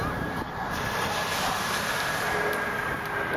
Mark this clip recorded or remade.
recorded